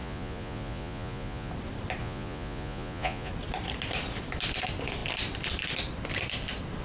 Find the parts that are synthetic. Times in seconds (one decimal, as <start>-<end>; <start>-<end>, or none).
0.0-1.5; 2.0-3.3